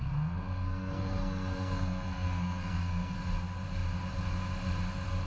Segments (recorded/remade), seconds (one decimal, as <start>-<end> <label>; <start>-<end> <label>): 0.0-3.2 remade; 3.2-5.3 recorded